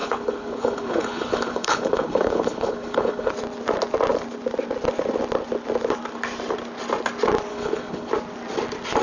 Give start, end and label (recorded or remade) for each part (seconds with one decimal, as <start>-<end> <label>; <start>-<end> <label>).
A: 0.0-3.3 remade; 3.3-7.5 recorded; 7.5-8.1 remade; 8.1-9.0 recorded